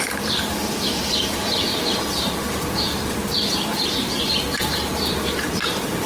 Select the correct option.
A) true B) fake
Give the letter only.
B